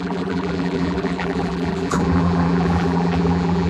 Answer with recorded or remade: remade